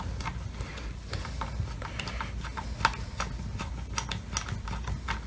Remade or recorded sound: recorded